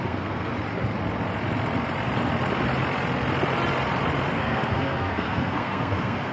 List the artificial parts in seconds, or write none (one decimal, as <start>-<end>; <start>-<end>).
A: 0.0-0.5; 4.3-6.3